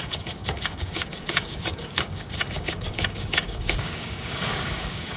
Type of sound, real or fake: fake